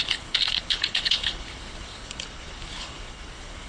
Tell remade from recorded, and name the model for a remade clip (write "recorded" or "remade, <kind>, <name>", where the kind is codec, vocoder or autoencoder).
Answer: remade, codec, HILCodec